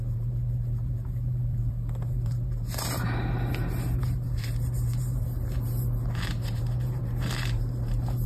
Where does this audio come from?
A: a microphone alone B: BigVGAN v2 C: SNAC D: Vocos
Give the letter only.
B